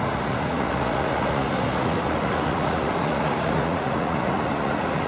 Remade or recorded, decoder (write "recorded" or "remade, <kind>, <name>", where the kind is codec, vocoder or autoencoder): remade, vocoder, Vocos